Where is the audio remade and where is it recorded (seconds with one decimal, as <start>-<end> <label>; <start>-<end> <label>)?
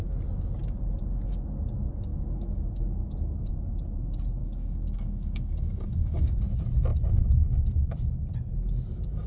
0.0-2.1 recorded; 2.1-3.5 remade; 3.5-4.4 recorded; 4.4-6.4 remade; 6.4-9.3 recorded